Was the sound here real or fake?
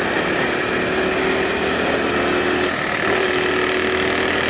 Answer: real